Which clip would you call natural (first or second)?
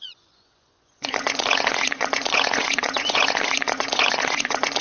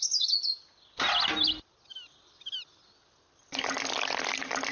second